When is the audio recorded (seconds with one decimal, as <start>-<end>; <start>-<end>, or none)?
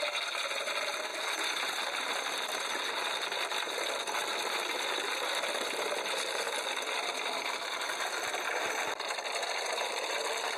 0.0-10.6